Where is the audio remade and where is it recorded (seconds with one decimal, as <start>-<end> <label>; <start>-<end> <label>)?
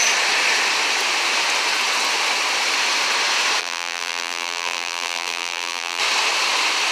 0.0-3.6 recorded; 3.6-6.0 remade; 6.0-6.9 recorded